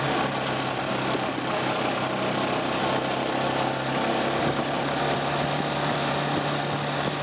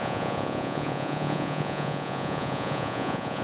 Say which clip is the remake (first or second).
second